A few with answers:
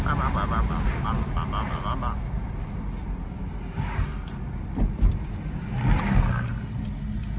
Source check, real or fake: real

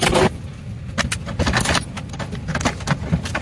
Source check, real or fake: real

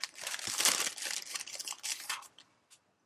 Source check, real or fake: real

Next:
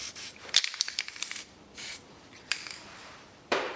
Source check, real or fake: fake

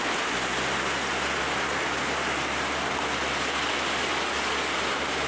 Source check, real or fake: real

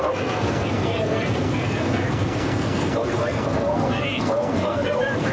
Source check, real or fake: fake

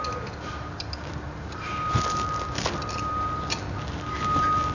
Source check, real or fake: real